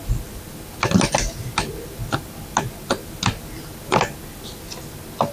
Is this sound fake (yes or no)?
no